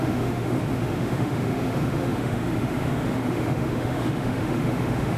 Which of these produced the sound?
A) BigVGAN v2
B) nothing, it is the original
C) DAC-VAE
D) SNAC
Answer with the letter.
C